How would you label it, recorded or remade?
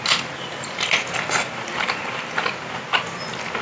recorded